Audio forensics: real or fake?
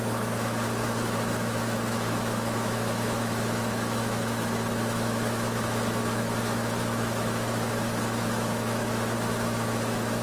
fake